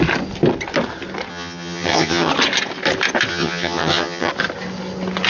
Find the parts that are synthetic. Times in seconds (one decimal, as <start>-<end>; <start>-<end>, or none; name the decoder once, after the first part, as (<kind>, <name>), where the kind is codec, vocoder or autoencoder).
1.3-2.3 (vocoder, HiFi-GAN); 3.3-4.3